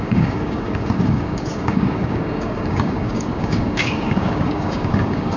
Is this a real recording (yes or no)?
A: no